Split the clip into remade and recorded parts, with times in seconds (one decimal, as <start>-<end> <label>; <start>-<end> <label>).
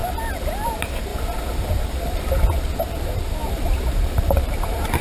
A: 0.0-0.7 recorded; 0.7-1.1 remade; 1.1-2.8 recorded; 2.8-5.0 remade